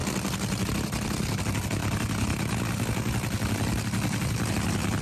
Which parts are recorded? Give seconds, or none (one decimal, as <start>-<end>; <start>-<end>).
0.0-5.0